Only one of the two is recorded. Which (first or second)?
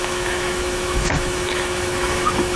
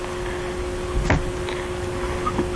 second